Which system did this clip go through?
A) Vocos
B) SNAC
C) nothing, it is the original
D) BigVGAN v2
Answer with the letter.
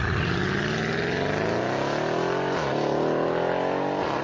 C